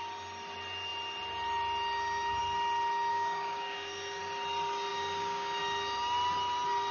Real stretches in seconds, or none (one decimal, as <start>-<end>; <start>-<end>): 0.0-3.1; 4.2-4.9; 5.6-6.9